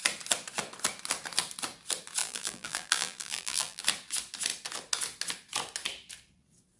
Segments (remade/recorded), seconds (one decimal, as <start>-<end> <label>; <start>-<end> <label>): 0.0-2.2 recorded; 2.2-3.8 remade; 3.8-6.8 recorded